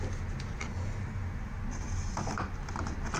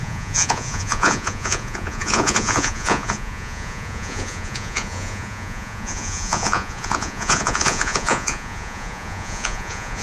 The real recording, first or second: first